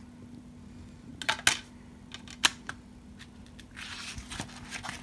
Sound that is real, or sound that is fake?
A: real